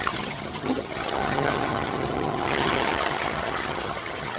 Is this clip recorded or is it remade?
remade